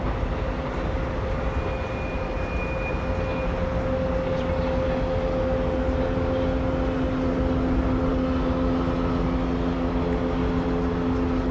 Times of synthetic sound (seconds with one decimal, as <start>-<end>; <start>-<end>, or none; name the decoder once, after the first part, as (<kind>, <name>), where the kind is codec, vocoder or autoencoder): none